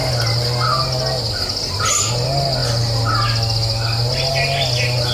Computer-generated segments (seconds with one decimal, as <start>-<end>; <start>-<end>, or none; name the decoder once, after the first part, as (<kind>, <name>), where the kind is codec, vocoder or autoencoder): none